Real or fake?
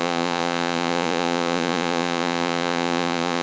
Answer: fake